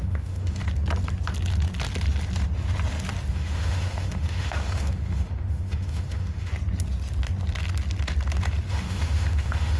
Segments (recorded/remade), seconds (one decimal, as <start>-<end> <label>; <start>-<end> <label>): 0.0-0.6 remade; 0.6-3.3 recorded; 3.3-6.5 remade; 6.5-8.7 recorded; 8.7-9.8 remade